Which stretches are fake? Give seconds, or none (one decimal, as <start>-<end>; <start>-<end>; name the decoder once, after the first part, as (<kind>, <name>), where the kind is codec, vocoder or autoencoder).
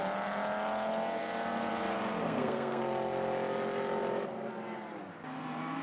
2.2-2.8 (codec, SNAC)